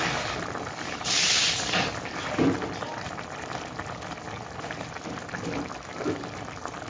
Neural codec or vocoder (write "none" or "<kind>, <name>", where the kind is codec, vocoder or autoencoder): none